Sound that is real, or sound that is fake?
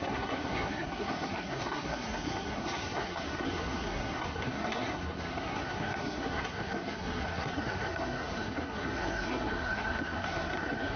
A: fake